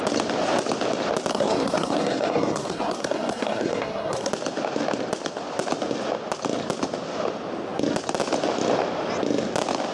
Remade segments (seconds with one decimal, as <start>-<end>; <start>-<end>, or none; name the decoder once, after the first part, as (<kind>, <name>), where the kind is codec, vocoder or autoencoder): 1.3-4.3 (codec, SNAC)

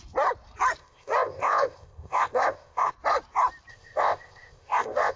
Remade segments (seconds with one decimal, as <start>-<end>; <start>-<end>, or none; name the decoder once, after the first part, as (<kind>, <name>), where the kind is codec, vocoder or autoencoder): 0.8-2.9 (codec, ZipCodec); 3.7-5.2